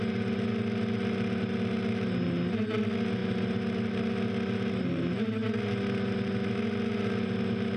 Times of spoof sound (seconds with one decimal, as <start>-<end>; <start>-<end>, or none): none